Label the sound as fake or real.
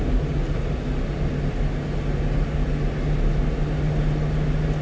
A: real